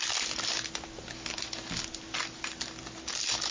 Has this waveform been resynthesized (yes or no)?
no